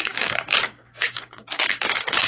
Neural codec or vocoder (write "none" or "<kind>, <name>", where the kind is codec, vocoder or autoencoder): codec, DAC